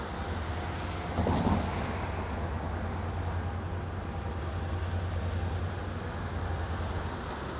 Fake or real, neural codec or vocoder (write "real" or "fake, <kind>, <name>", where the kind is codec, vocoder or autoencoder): real